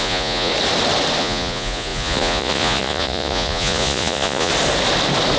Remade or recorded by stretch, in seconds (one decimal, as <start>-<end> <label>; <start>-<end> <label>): 0.0-0.5 remade; 0.5-1.2 recorded; 1.2-4.5 remade; 4.5-5.4 recorded